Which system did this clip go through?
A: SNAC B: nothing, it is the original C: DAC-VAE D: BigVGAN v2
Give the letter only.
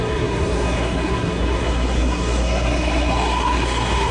A